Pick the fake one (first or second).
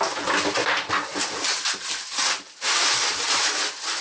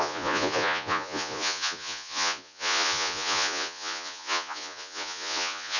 second